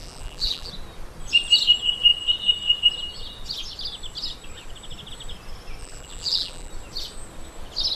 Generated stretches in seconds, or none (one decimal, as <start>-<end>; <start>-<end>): 0.0-0.7; 5.8-6.7